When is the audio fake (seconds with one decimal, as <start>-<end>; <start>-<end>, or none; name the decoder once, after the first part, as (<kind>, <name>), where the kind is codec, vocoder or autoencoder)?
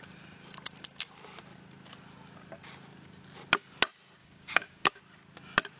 4.2-5.0 (codec, DAC)